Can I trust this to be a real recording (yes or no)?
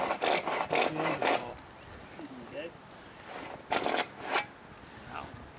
yes